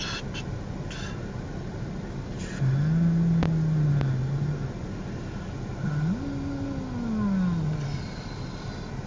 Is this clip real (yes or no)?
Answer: yes